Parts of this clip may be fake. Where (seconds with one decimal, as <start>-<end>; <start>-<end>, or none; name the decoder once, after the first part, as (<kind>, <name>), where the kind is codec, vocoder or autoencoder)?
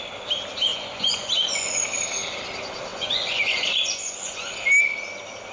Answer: 0.7-1.8 (vocoder, Vocos); 2.9-4.5